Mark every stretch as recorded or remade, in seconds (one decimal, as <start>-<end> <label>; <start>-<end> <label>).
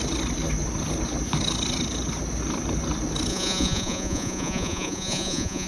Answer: 0.0-3.3 recorded; 3.3-5.7 remade